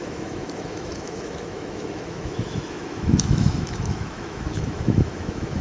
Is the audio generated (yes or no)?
yes